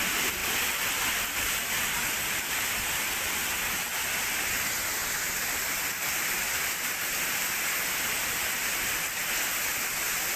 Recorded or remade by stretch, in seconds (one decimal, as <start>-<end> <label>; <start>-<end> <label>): 0.0-10.4 recorded